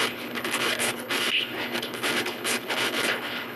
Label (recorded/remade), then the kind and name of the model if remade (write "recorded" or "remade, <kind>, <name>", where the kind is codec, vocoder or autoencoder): remade, codec, HILCodec